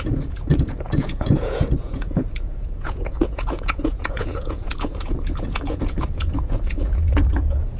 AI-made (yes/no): yes